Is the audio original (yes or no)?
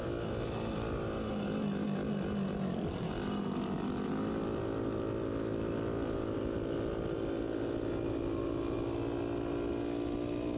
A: yes